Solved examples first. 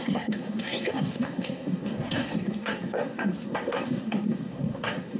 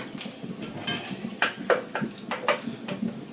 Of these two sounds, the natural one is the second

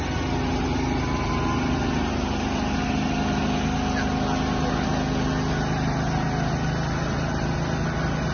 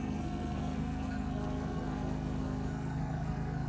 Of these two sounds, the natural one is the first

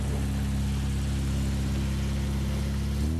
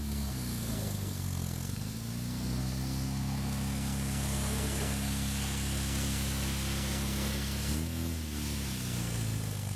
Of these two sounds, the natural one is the first